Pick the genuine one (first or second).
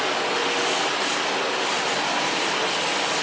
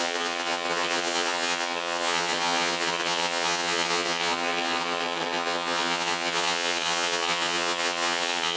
first